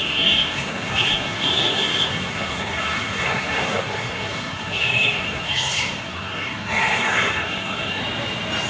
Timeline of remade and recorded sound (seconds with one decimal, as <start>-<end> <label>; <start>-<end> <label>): 0.0-8.0 remade; 8.0-8.7 recorded